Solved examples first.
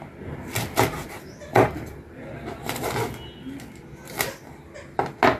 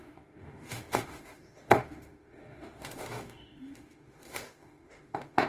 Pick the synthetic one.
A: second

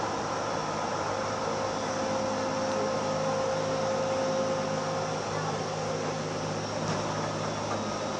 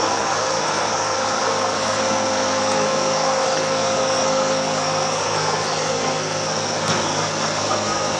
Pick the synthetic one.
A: second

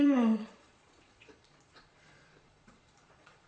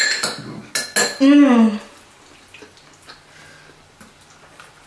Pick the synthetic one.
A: first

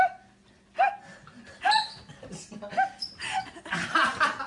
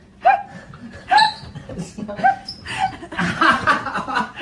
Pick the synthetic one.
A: second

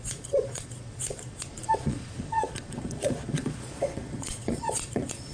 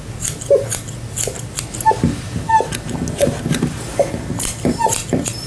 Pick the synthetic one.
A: first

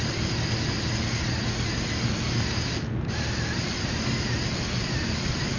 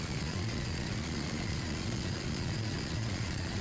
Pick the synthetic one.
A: second